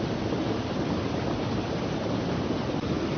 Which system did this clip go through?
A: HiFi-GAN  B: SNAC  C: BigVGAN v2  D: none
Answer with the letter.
D